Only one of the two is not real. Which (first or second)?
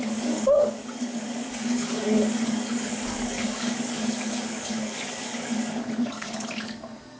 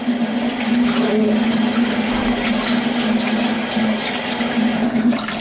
first